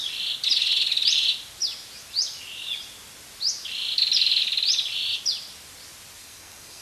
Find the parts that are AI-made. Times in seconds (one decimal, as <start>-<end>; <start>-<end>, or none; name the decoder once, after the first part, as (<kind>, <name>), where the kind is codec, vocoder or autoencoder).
6.2-6.8 (codec, SNAC)

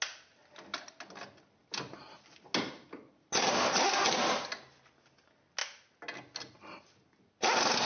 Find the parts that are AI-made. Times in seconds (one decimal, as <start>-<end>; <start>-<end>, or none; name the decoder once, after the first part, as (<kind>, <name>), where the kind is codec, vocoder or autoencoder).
none

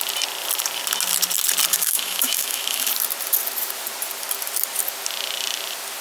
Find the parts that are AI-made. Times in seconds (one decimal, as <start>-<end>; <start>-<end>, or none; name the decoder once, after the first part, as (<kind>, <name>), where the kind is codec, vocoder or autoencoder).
1.7-2.9 (autoencoder, DAC-VAE)

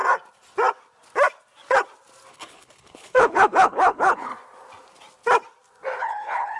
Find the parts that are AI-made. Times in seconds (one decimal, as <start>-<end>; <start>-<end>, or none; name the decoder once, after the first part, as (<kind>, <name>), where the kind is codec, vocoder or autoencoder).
2.3-4.3 (codec, HILCodec); 6.0-6.6